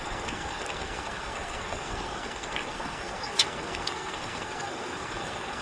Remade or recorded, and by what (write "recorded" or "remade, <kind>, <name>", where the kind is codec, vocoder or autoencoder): remade, codec, SNAC